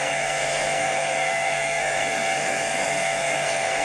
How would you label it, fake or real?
fake